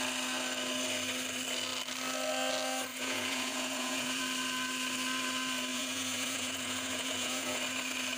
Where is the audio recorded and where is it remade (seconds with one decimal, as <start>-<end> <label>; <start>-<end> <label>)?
0.0-2.9 recorded; 2.9-4.2 remade; 4.2-5.7 recorded; 5.7-7.6 remade; 7.6-8.2 recorded